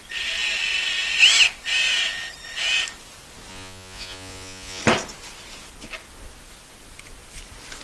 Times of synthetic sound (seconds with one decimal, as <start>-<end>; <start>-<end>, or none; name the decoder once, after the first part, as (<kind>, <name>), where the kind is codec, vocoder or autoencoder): 3.5-4.8 (vocoder, Vocos)